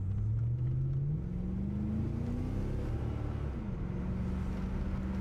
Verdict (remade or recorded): recorded